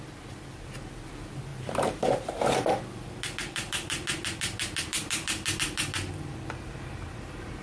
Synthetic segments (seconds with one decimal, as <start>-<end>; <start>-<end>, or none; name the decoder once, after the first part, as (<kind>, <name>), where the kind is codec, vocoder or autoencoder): none